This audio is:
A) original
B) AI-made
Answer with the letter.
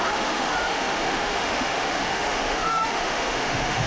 B